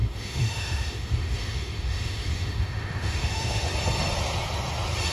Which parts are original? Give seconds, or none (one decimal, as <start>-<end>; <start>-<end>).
3.7-5.1